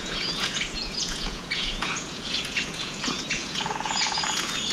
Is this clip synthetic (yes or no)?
yes